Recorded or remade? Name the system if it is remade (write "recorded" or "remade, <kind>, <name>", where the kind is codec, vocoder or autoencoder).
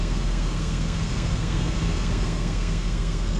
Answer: remade, codec, SNAC